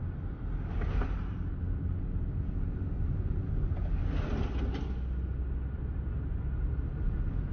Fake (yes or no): no